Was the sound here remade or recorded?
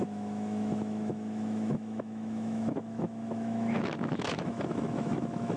remade